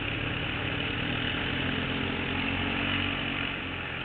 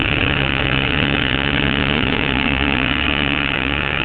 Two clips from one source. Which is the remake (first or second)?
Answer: second